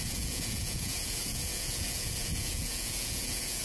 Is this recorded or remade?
remade